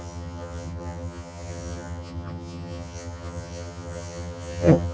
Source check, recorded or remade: remade